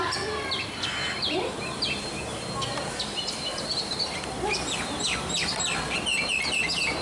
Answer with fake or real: fake